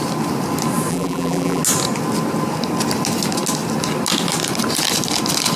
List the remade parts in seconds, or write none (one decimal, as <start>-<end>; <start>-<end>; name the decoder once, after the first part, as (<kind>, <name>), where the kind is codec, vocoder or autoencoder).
0.9-1.6 (vocoder, BigVGAN v2)